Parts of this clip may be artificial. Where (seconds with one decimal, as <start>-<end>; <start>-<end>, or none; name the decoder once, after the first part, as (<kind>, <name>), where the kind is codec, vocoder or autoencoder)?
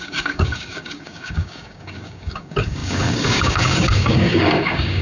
0.0-5.0 (codec, DAC)